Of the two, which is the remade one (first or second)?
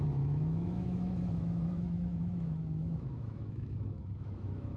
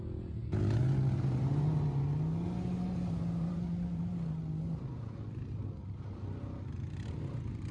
first